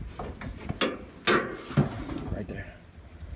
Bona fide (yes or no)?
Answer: yes